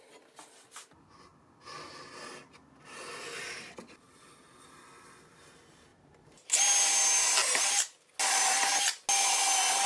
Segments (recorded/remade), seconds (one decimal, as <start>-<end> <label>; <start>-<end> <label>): 0.0-9.9 recorded